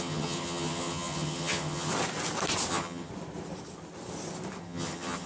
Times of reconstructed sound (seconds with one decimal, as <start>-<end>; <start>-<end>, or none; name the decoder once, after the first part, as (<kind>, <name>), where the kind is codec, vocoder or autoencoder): 0.0-1.9 (vocoder, HiFi-GAN); 2.7-3.1; 4.6-5.3